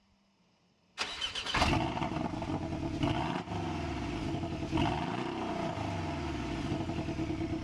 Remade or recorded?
recorded